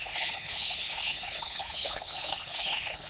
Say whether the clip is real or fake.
fake